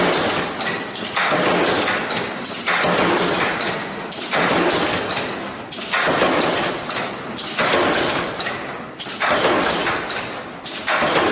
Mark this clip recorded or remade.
recorded